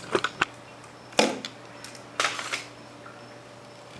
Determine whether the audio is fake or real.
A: real